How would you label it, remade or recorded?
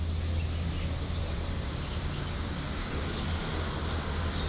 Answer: recorded